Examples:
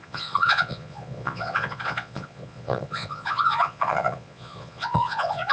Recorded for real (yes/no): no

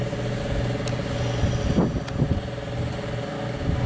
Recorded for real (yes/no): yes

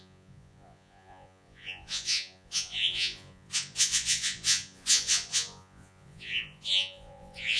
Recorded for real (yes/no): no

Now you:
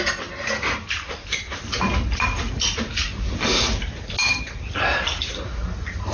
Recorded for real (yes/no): yes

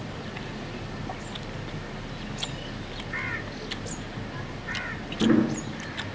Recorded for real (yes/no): yes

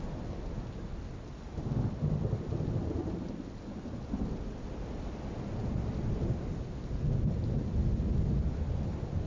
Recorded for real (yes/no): yes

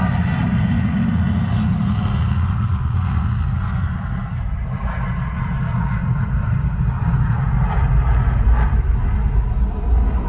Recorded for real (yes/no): yes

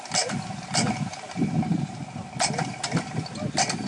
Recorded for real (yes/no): yes